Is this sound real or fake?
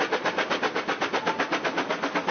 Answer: real